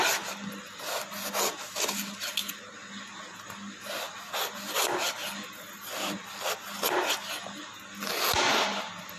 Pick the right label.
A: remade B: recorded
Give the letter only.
B